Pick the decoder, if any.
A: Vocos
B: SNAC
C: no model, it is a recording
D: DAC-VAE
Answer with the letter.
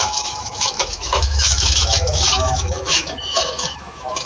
D